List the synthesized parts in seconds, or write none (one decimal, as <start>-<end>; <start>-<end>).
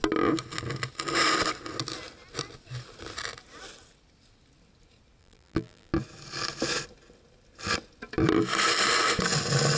5.2-5.9